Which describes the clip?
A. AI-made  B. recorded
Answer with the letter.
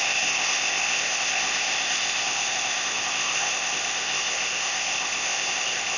A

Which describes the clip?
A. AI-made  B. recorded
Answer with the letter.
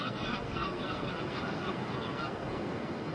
A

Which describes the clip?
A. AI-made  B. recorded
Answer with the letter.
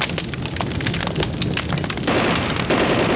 B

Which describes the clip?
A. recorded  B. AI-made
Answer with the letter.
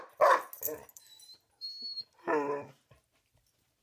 A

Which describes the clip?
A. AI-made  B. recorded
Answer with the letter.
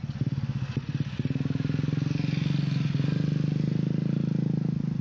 B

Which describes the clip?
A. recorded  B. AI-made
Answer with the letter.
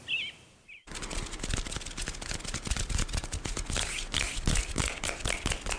A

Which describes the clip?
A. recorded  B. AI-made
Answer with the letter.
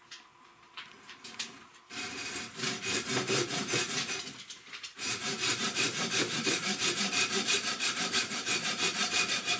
B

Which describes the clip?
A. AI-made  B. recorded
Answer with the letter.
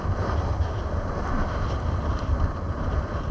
B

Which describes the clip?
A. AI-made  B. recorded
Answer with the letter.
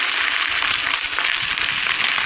B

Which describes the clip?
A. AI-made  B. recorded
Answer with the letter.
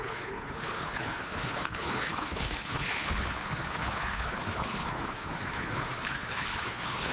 A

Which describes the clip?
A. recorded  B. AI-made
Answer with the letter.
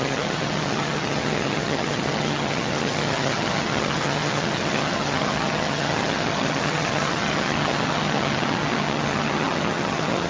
B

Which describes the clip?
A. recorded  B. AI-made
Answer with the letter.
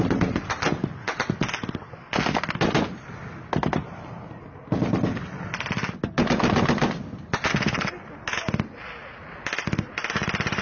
A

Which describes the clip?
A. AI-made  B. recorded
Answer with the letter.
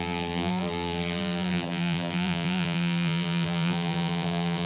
A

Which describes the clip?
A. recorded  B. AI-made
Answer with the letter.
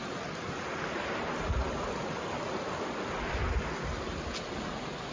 A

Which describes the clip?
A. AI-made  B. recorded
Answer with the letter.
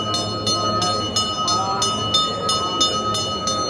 B